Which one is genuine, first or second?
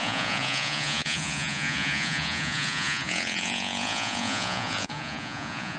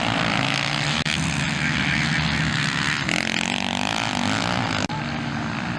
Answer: second